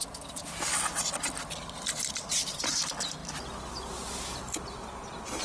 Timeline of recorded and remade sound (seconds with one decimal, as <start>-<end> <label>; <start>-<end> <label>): 0.0-5.4 recorded